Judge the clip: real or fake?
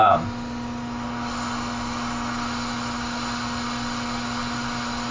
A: real